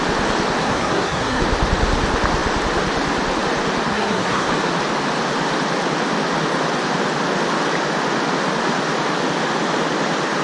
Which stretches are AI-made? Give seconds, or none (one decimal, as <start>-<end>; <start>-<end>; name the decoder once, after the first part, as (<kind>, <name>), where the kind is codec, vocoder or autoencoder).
0.6-1.4 (codec, SNAC); 3.9-4.5

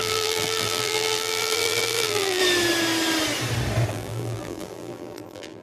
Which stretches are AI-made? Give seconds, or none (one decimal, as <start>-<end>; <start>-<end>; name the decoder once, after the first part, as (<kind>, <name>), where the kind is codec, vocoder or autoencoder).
0.0-2.4 (vocoder, BigVGAN v2); 3.9-5.6

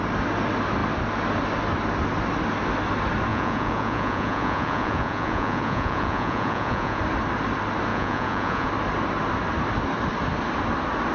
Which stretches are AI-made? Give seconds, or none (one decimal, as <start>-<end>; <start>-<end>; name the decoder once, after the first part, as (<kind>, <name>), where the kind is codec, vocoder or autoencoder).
3.3-7.0 (vocoder, Vocos); 7.9-8.7

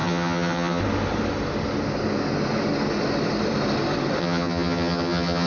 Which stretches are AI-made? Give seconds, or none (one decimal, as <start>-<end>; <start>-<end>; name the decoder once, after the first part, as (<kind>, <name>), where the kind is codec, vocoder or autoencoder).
0.0-0.8 (vocoder, HiFi-GAN); 4.2-5.5

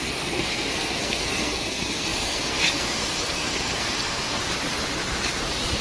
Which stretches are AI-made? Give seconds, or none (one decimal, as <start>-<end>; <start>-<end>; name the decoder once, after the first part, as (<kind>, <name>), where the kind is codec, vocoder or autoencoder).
0.0-4.4 (codec, SNAC)